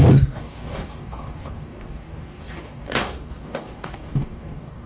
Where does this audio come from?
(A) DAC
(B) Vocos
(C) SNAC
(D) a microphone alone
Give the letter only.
A